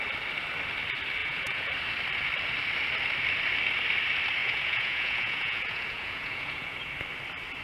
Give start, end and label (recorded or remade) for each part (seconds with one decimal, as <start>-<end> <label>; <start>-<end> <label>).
0.0-1.2 recorded; 1.2-1.7 remade; 1.7-4.4 recorded; 4.4-6.9 remade; 6.9-7.6 recorded